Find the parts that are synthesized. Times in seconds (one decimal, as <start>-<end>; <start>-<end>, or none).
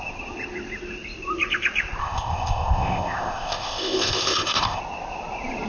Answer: 2.0-4.8